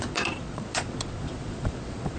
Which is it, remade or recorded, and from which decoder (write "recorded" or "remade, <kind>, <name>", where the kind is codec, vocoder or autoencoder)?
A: remade, vocoder, Vocos